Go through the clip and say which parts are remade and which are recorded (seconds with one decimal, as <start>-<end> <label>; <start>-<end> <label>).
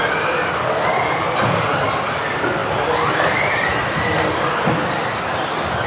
0.0-5.9 recorded